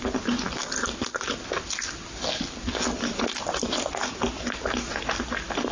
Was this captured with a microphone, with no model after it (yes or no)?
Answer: yes